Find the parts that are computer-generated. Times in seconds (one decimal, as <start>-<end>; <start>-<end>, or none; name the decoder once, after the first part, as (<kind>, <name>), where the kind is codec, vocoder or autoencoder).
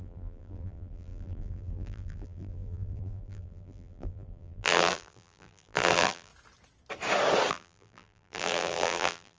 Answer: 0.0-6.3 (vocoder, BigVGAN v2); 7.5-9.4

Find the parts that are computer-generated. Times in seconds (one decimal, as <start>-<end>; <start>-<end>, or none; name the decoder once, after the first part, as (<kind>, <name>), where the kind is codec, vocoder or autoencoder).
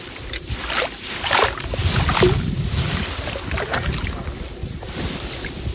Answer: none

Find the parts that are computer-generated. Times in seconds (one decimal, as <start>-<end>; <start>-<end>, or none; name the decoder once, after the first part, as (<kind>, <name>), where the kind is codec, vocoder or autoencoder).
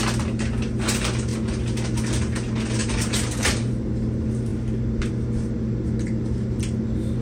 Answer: 2.8-3.7 (vocoder, BigVGAN v2)